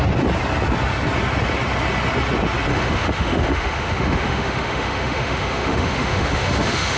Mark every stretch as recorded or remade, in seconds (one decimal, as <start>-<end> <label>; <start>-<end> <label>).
0.0-2.7 recorded; 2.7-7.0 remade